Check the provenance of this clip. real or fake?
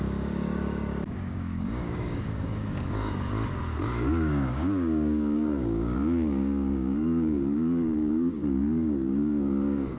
fake